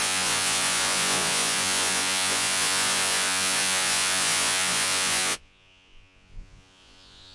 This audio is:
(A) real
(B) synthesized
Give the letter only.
B